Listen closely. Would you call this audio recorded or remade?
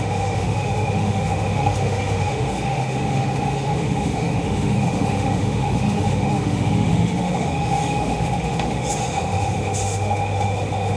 remade